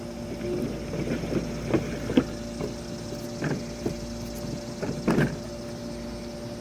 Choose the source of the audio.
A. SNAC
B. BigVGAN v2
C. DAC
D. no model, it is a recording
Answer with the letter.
B